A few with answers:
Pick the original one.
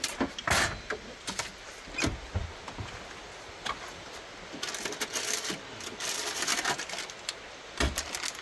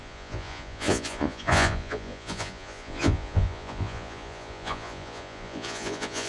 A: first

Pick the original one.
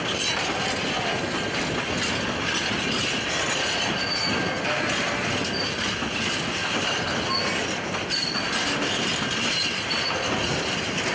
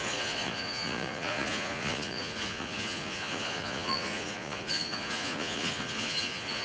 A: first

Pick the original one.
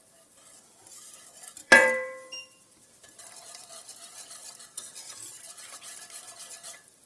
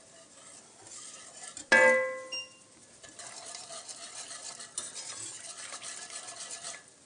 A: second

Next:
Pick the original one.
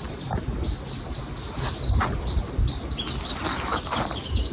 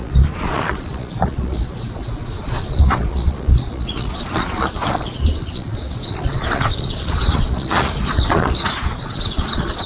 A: first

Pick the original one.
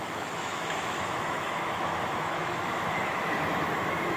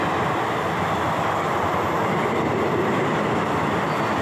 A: second